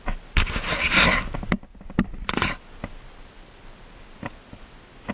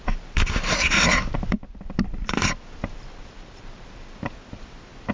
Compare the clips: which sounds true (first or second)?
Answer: first